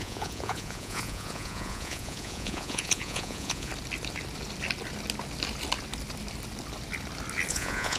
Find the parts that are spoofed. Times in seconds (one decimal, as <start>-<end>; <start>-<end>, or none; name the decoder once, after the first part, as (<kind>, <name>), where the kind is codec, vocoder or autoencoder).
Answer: 0.0-3.7 (vocoder, Vocos); 7.5-8.0